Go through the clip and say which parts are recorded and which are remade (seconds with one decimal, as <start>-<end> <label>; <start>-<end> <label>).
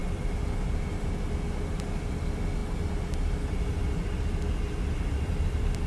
0.0-5.9 recorded